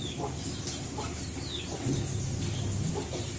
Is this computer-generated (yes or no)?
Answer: no